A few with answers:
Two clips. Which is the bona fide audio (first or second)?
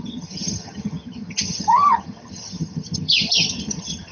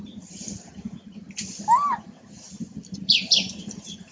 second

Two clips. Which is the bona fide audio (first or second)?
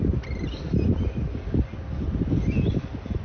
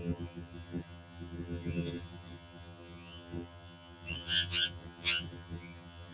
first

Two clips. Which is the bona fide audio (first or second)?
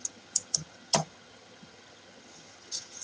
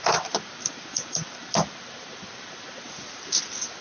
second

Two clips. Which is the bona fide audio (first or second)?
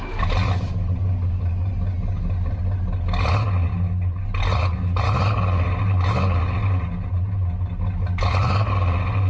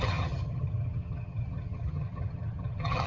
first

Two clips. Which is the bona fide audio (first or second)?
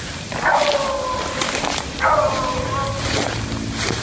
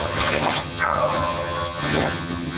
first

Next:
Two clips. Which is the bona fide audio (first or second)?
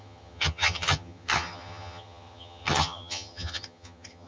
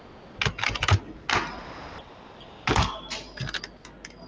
second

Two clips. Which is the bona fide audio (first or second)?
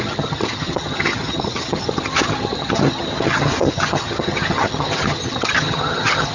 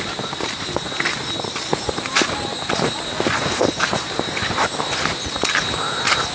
second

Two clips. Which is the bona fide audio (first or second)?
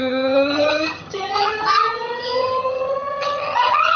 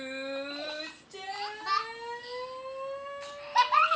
second